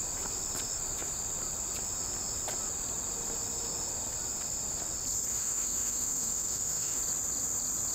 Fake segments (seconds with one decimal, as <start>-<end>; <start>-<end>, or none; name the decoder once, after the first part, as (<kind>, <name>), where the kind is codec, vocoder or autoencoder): 5.3-7.0 (autoencoder, DAC-VAE)